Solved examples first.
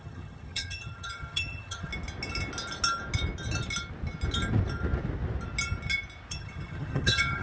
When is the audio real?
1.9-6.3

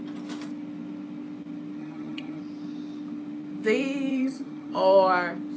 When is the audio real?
0.0-1.8; 2.4-4.1; 4.7-5.6

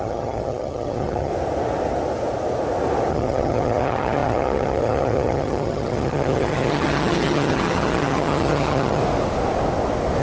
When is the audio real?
1.3-3.1; 9.0-10.2

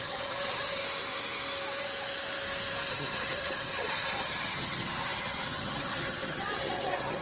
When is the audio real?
0.8-2.9

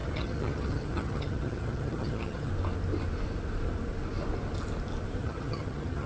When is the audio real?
2.5-5.2